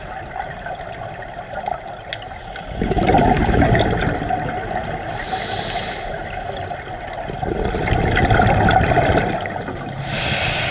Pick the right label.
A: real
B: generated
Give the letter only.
A